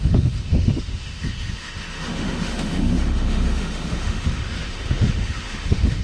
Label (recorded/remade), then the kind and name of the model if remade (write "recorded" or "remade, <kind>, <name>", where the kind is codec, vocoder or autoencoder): remade, autoencoder, DAC-VAE